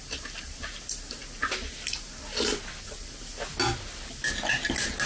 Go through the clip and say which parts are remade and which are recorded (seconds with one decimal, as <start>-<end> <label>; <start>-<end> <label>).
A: 0.0-5.1 recorded